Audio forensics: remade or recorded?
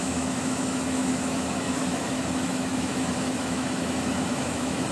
remade